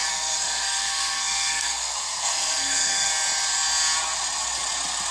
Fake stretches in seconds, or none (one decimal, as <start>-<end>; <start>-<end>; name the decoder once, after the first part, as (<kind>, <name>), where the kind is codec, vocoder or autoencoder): 0.0-3.1 (codec, SNAC)